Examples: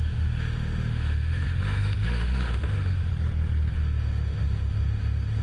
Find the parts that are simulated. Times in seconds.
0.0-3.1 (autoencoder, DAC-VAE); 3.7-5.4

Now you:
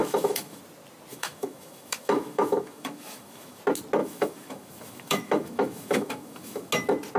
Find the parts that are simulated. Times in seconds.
0.0-0.6 (autoencoder, DAC-VAE); 1.1-3.6; 4.0-6.7